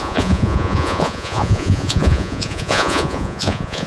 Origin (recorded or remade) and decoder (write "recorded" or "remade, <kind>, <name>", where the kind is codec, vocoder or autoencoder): remade, vocoder, Vocos